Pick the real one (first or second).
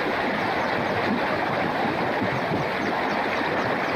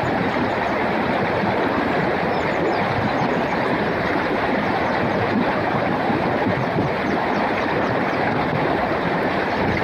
first